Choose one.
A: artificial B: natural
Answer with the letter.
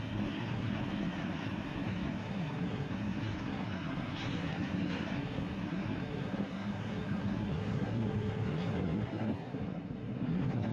A